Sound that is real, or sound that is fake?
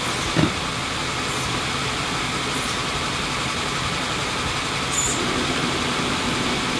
real